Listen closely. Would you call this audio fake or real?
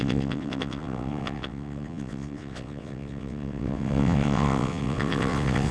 fake